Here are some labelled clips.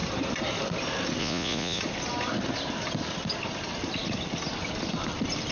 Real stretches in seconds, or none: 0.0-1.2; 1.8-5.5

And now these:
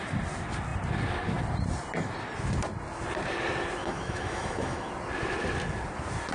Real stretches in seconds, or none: 0.0-3.8; 4.9-6.3

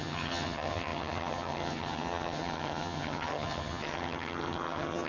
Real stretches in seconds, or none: none

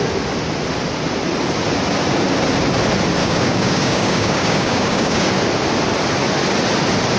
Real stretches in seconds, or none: 0.0-3.2; 5.3-7.2

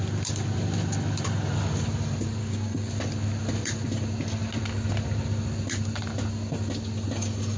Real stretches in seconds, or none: 0.0-2.4; 2.9-7.6

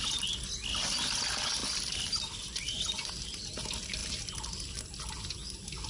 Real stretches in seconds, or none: 0.0-1.6; 2.1-5.9

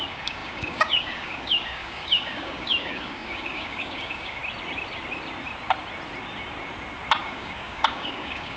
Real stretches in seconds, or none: 4.4-7.2

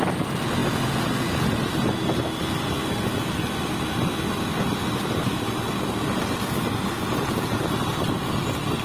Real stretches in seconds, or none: 0.0-8.8